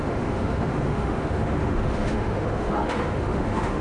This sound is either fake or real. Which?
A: fake